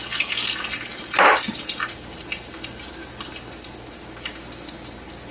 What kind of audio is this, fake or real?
real